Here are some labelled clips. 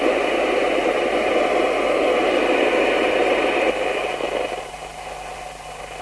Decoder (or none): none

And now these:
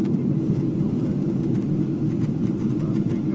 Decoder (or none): none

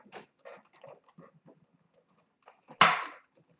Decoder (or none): none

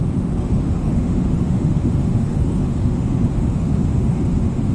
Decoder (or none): autoencoder, DAC-VAE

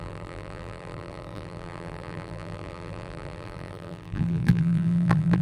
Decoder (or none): vocoder, BigVGAN v2